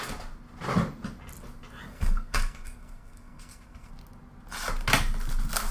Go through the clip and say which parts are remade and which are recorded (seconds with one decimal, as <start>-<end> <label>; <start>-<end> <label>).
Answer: 0.0-1.9 recorded; 1.9-3.9 remade; 3.9-5.7 recorded